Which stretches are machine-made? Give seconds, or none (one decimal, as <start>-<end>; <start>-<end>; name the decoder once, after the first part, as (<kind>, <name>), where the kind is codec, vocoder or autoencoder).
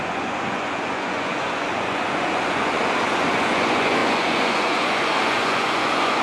0.0-6.2 (vocoder, Vocos)